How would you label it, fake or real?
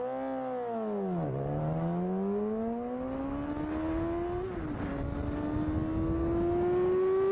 real